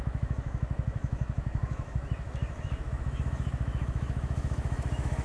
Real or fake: fake